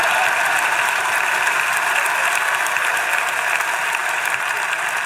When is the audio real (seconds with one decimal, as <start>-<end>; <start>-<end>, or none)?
0.0-5.1